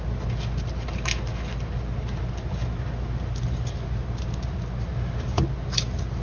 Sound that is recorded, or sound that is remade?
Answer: recorded